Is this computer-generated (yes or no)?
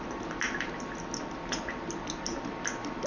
no